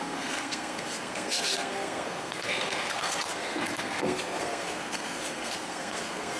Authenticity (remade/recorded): remade